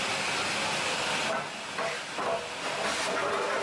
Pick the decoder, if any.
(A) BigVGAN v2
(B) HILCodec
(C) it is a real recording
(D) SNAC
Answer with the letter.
C